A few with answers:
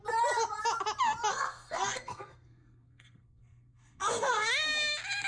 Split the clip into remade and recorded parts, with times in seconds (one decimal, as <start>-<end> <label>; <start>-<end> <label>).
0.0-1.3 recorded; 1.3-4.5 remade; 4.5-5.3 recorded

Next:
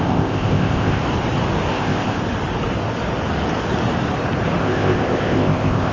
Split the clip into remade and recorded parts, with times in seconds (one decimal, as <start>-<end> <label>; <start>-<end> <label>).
0.0-1.0 remade; 1.0-1.7 recorded; 1.7-2.2 remade; 2.2-4.6 recorded; 4.6-5.9 remade

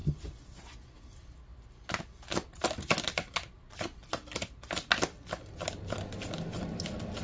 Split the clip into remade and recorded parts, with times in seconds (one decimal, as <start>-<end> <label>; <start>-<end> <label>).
0.0-7.2 recorded

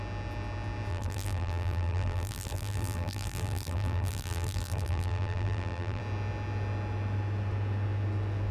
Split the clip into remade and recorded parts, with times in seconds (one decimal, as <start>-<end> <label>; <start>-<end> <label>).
0.0-0.9 recorded; 0.9-6.0 remade; 6.0-8.5 recorded

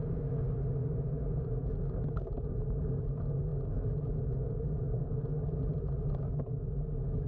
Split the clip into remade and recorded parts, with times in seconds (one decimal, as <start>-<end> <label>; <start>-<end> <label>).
0.0-7.3 recorded

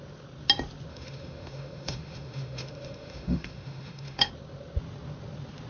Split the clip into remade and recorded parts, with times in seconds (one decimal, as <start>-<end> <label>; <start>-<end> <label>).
0.0-0.9 recorded; 0.9-4.3 remade; 4.3-5.7 recorded

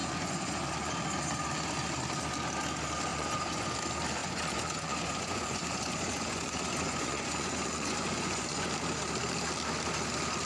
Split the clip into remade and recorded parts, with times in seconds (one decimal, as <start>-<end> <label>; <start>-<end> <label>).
0.0-0.9 remade; 0.9-3.1 recorded; 3.1-3.7 remade; 3.7-4.2 recorded; 4.2-8.7 remade; 8.7-10.4 recorded